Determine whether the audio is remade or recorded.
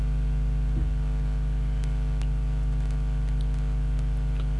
recorded